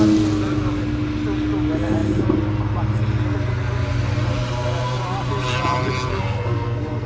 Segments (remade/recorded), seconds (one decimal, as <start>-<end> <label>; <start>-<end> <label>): 0.0-6.1 recorded; 6.1-7.1 remade